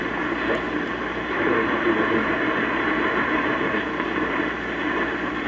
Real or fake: fake